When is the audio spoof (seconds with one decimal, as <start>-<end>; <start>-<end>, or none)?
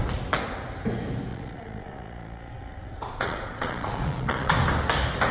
1.3-4.5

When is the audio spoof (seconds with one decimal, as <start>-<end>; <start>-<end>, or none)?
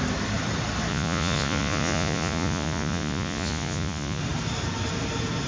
0.9-4.2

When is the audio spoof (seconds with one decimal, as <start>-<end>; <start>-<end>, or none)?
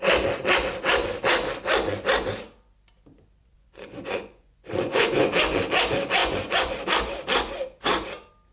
3.4-5.3; 6.2-6.7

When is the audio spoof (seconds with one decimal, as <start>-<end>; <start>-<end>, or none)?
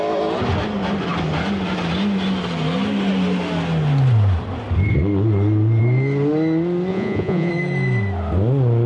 6.9-7.5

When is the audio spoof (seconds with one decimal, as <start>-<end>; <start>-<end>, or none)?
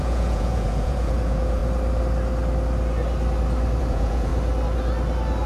0.0-1.6; 3.8-4.3